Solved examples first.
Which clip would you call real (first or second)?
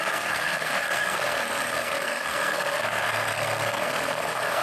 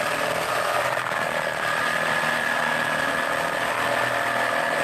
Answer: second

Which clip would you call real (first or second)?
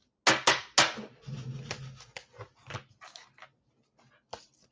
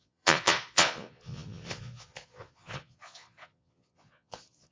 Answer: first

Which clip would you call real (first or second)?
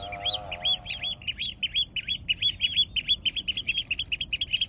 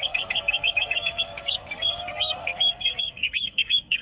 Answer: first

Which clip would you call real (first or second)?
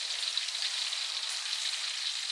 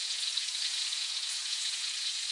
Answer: first